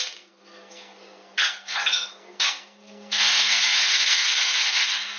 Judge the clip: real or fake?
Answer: fake